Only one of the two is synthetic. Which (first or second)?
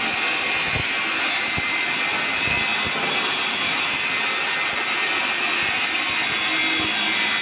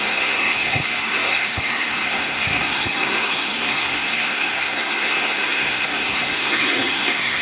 second